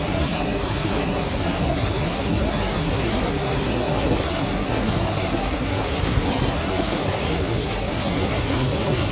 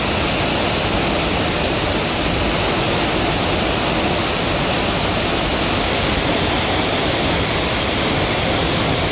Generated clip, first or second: first